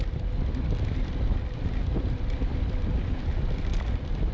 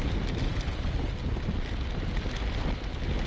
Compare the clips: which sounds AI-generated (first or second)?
first